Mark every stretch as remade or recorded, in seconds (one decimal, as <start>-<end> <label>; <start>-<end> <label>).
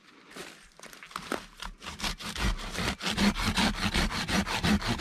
0.0-5.0 recorded